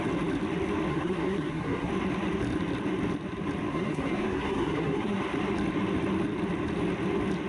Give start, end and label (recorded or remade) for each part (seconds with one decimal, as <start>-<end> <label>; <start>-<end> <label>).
0.0-0.9 recorded; 0.9-1.9 remade; 1.9-3.7 recorded; 3.7-5.2 remade; 5.2-7.5 recorded